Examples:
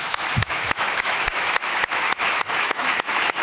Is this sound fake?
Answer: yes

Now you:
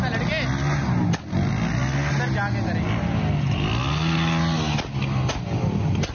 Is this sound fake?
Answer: no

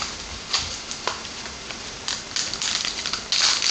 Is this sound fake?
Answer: no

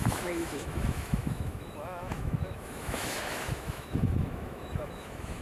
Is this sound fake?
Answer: yes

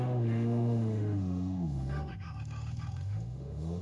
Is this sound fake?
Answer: yes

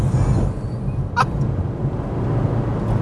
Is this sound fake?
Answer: no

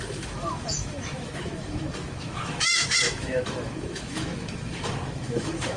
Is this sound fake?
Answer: yes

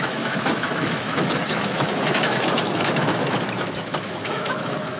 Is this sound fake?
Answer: yes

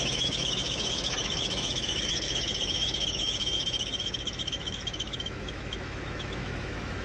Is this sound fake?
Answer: yes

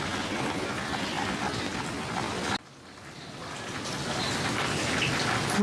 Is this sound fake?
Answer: no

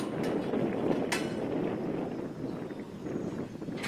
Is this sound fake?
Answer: no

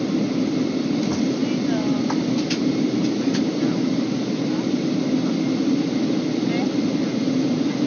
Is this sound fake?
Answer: no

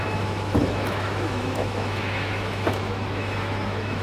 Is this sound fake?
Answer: yes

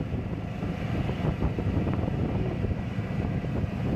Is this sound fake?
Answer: no